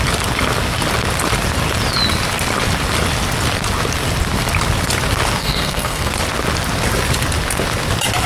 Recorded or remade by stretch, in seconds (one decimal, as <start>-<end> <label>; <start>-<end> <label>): 0.0-5.4 recorded; 5.4-6.1 remade; 6.1-8.3 recorded